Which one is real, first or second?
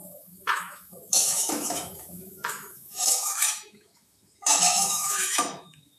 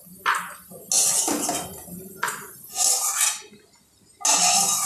second